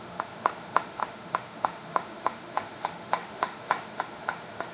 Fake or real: fake